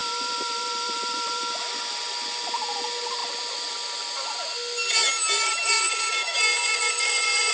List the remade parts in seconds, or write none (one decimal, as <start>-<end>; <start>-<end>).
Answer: 0.0-1.4; 3.2-4.3